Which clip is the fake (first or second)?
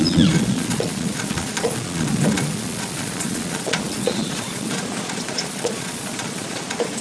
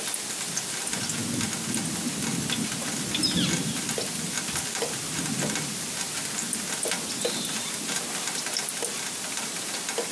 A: first